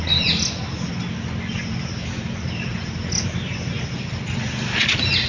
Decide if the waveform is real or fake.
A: real